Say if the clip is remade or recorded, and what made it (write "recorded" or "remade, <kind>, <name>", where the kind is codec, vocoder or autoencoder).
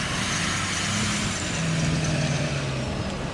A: recorded